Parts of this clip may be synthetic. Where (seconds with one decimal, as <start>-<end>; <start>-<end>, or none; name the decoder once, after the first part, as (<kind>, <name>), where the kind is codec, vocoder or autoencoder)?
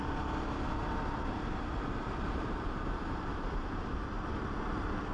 0.8-3.9 (vocoder, BigVGAN v2)